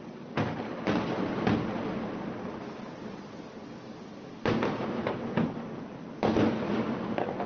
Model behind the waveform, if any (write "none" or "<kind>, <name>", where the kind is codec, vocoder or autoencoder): none